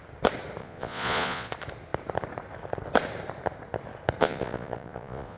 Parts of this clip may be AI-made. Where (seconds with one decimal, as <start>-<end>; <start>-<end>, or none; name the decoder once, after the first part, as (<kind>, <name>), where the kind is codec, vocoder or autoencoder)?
0.6-1.5 (vocoder, Vocos); 4.2-5.4